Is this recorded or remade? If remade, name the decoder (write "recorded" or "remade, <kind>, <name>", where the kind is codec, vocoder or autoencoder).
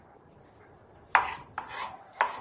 remade, vocoder, BigVGAN v2